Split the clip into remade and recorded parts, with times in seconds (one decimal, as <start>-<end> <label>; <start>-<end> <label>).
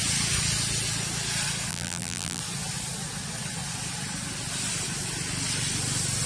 0.0-1.7 recorded; 1.7-2.4 remade; 2.4-6.3 recorded